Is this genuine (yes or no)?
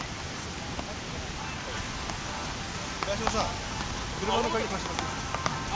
yes